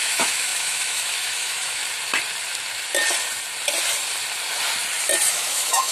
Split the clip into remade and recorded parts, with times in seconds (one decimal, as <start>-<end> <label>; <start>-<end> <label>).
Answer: 0.0-1.8 remade; 1.8-5.3 recorded; 5.3-5.9 remade